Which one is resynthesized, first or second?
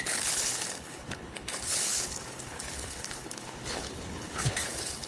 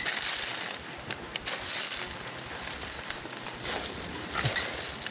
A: first